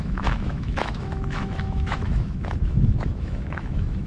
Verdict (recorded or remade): remade